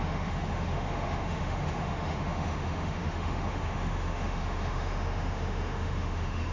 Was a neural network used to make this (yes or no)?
yes